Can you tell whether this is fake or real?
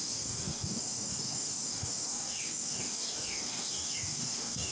fake